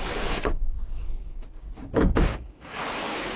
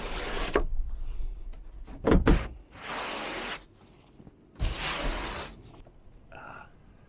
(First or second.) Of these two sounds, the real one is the second